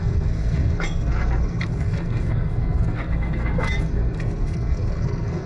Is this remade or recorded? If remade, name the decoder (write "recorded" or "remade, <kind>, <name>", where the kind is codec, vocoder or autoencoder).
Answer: remade, codec, SNAC